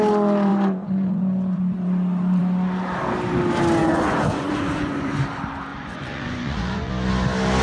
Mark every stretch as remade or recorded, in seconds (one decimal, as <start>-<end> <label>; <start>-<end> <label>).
0.0-0.5 recorded; 0.5-1.6 remade; 1.6-3.8 recorded; 3.8-5.2 remade; 5.2-5.7 recorded; 5.7-6.9 remade; 6.9-7.6 recorded